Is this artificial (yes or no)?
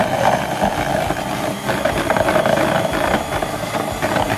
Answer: yes